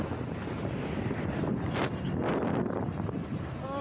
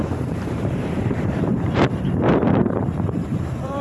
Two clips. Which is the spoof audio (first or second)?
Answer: second